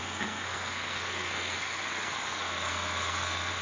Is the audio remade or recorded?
remade